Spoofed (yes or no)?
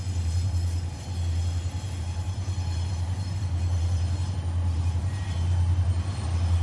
yes